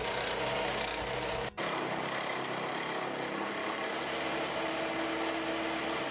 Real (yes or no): yes